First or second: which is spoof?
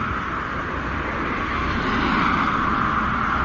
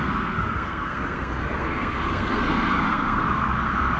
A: second